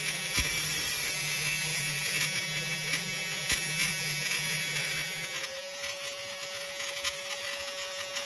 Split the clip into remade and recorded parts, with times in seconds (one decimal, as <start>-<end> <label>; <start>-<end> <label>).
0.0-0.5 remade; 0.5-1.1 recorded; 1.1-8.3 remade